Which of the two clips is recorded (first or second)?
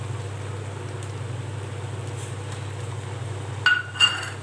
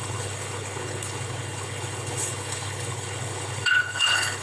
first